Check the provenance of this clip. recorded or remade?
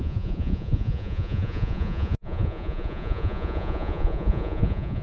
remade